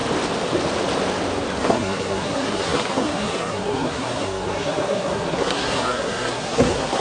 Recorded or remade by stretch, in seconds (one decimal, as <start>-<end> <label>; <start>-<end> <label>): 0.0-1.6 recorded; 1.6-7.0 remade